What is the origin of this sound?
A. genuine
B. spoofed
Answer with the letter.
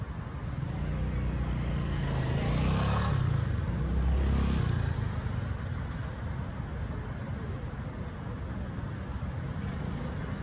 A